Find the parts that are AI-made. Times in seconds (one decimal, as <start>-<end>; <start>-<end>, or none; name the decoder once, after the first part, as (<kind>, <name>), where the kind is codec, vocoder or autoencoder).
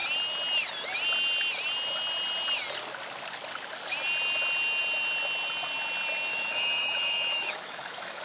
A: 6.3-8.2 (autoencoder, DAC-VAE)